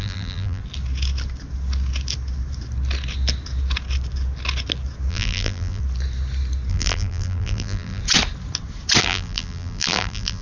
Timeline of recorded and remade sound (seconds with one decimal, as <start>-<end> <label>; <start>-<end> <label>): 0.0-0.6 remade; 0.6-5.1 recorded; 5.1-5.8 remade; 5.8-6.7 recorded; 6.7-8.0 remade; 8.0-9.0 recorded; 9.0-10.4 remade